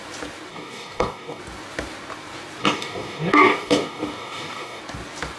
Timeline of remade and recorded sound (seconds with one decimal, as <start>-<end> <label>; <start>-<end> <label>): 0.0-0.5 recorded; 0.5-1.4 remade; 1.4-2.6 recorded; 2.6-4.8 remade; 4.8-5.4 recorded